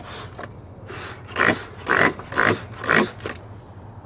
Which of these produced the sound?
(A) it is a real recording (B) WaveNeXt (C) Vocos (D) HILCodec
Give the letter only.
A